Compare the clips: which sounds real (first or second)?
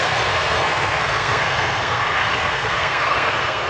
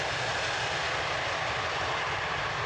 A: second